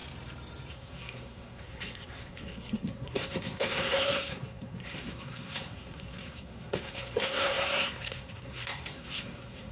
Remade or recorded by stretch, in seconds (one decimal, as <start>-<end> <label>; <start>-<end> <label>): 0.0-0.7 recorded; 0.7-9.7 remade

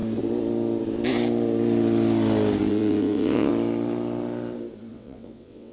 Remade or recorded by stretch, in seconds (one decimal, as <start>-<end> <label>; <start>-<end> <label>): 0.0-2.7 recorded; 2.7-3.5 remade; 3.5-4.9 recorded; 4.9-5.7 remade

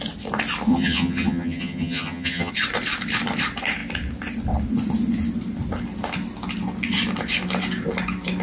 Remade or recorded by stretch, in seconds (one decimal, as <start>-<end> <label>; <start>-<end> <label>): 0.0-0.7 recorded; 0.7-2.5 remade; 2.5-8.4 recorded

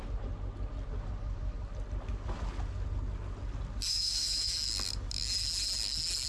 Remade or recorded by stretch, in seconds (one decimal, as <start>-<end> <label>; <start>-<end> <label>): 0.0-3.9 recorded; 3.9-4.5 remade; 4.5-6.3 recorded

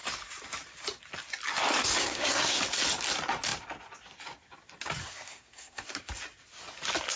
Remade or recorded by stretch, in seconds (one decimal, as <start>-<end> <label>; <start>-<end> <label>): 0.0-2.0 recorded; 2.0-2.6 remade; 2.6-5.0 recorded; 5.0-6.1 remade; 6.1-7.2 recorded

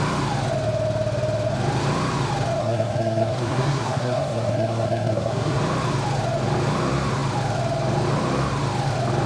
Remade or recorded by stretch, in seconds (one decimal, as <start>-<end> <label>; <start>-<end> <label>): 0.0-2.6 recorded; 2.6-5.6 remade; 5.6-9.3 recorded

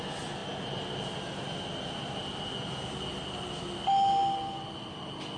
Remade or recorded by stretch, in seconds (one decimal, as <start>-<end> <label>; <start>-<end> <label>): 0.0-5.4 recorded

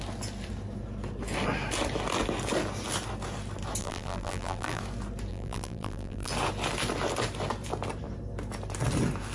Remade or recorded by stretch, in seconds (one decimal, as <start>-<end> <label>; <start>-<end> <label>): 0.0-3.8 recorded; 3.8-4.8 remade; 4.8-5.3 recorded; 5.3-6.3 remade; 6.3-9.3 recorded